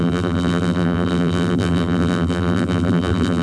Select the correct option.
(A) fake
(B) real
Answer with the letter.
A